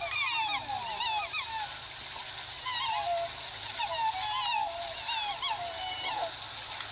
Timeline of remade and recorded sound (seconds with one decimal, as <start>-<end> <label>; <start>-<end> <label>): 0.0-6.9 recorded